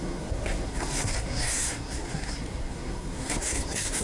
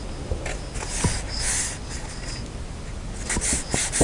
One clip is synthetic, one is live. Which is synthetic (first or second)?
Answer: first